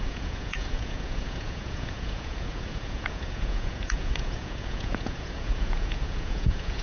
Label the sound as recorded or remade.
remade